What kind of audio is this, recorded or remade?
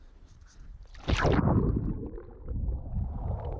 recorded